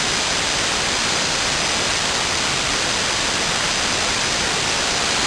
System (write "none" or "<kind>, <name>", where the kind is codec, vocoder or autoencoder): none